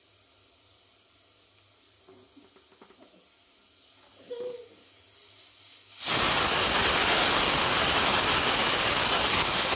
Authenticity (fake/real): real